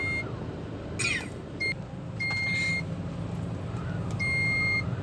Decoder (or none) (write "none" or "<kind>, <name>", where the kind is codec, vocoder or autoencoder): none